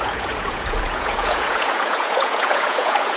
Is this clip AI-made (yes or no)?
yes